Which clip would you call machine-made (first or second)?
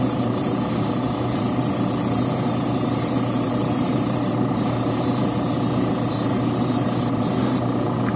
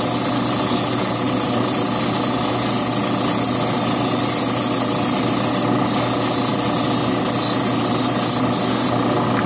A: first